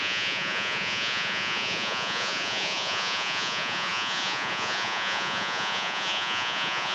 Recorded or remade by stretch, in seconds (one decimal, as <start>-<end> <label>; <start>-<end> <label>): 0.0-6.9 remade